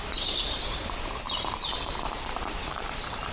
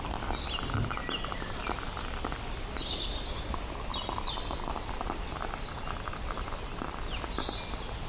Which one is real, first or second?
second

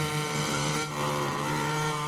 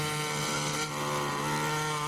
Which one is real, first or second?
second